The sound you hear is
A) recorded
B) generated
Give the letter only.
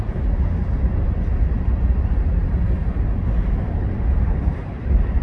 A